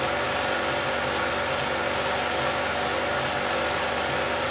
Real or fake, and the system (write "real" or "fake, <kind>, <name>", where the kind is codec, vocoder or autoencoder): real